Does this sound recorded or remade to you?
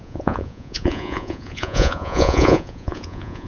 remade